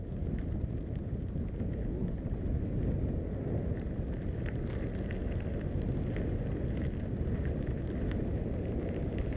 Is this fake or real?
real